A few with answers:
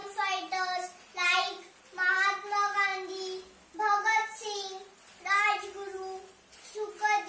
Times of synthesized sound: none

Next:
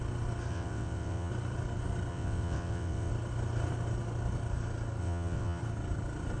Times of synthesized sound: 0.5-1.3 (vocoder, WaveNeXt); 2.1-3.1; 5.0-5.6

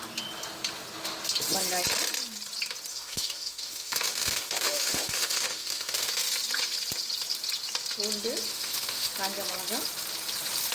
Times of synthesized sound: 2.9-6.1 (autoencoder, DAC-VAE); 8.5-9.1

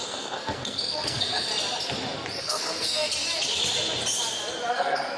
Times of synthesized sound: 0.0-1.5 (codec, SNAC); 2.4-3.1; 4.7-5.2

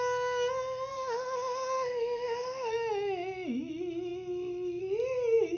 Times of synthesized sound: 0.9-2.7 (autoencoder, DAC-VAE)

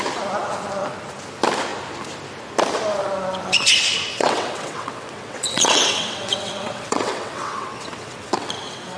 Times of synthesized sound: 4.1-9.0 (vocoder, WaveNeXt)

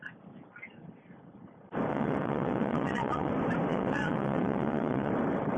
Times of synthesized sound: 1.9-3.3 (vocoder, WaveNeXt); 3.7-5.1

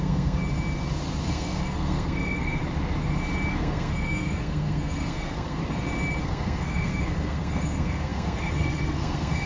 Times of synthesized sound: 0.0-0.4 (codec, SNAC); 1.2-2.6; 3.5-5.6; 6.2-9.5